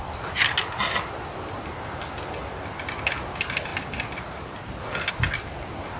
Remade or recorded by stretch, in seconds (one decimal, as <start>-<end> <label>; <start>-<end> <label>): 0.0-2.4 recorded; 2.4-3.0 remade; 3.0-6.0 recorded